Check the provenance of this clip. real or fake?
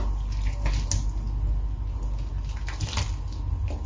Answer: real